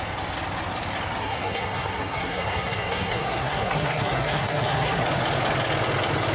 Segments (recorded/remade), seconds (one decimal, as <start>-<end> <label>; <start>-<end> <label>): 0.0-1.2 recorded; 1.2-5.0 remade; 5.0-6.3 recorded